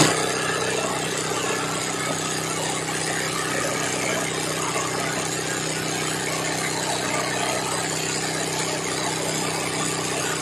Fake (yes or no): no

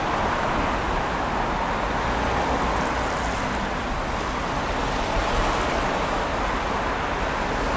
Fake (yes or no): no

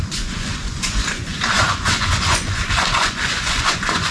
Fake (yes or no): yes